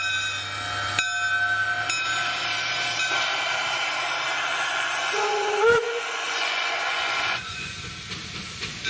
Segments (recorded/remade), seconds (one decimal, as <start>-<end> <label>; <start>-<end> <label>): 0.0-4.5 recorded; 4.5-7.7 remade; 7.7-8.9 recorded